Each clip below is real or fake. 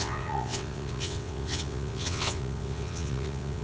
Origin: fake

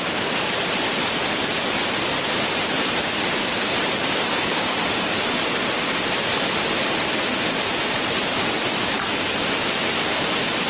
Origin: fake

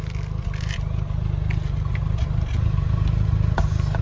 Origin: real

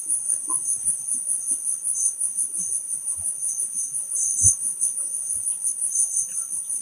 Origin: real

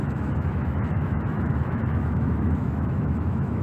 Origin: fake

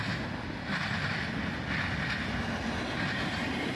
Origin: real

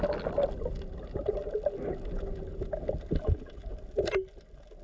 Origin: real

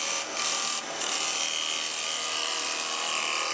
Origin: real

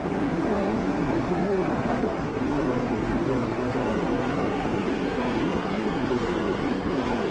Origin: fake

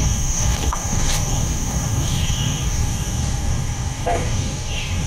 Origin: fake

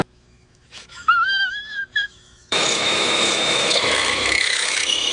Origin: fake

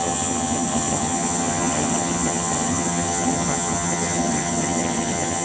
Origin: fake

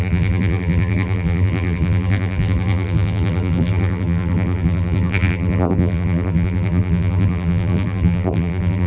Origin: fake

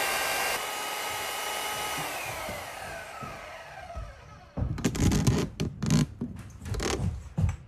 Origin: real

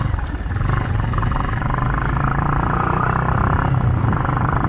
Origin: real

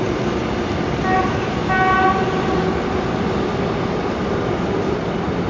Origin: real